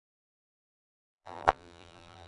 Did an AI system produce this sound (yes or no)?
yes